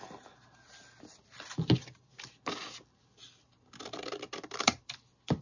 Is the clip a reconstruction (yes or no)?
no